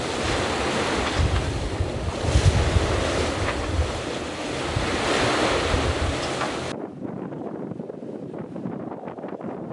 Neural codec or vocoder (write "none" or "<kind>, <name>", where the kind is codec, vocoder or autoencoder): none